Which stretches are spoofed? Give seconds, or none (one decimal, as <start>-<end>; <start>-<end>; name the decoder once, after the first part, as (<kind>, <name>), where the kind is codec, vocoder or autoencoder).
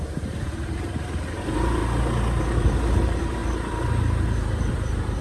0.0-1.8 (vocoder, BigVGAN v2); 2.4-5.2